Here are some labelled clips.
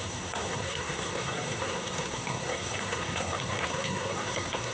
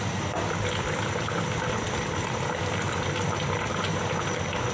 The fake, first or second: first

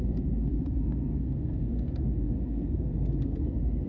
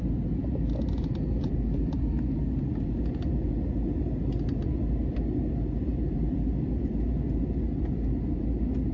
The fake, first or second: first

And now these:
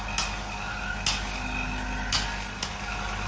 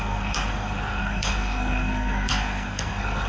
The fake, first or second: second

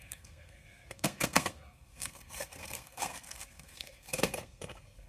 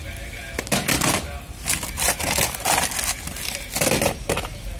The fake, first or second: first